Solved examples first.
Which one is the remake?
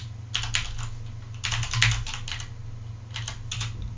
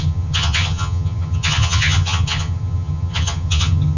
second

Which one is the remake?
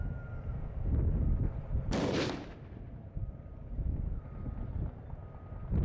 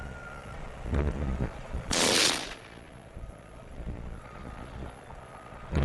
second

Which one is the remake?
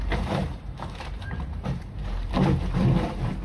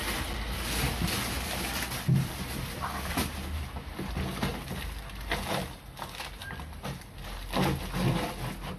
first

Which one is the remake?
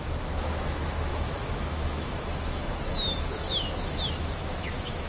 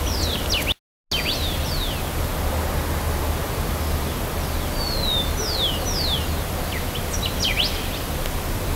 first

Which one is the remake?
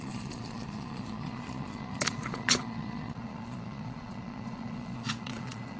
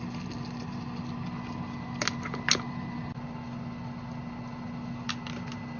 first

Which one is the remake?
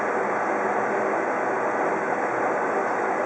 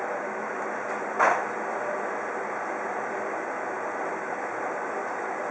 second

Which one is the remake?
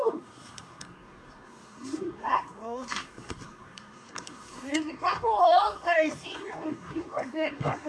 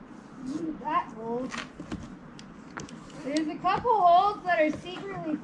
first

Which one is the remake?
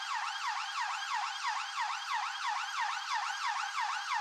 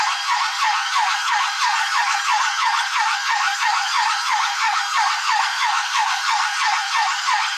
second